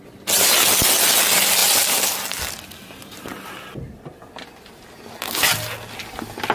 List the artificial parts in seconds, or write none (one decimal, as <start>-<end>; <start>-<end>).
none